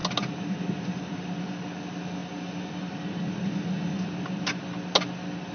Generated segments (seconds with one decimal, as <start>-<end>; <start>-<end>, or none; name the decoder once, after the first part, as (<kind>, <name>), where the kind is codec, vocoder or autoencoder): none